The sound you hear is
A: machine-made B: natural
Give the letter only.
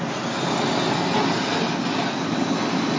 B